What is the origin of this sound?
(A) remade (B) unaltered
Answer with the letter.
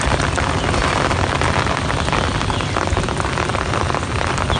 B